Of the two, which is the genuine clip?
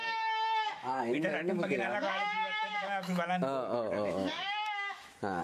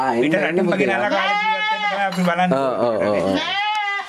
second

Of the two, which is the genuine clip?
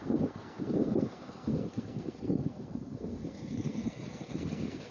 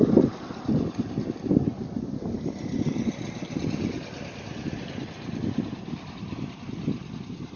second